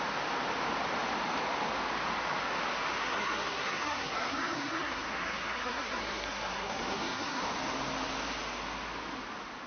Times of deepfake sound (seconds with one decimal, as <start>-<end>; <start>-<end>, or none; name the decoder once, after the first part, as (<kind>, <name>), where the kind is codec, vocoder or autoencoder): 3.0-7.4 (codec, SNAC)